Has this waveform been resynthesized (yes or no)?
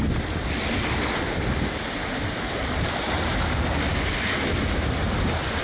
no